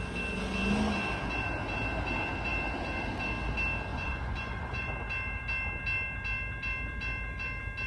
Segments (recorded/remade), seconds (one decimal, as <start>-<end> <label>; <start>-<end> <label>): 0.0-3.9 recorded; 3.9-4.9 remade; 4.9-7.9 recorded